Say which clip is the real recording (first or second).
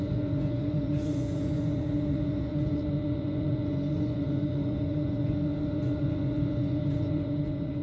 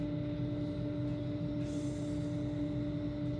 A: second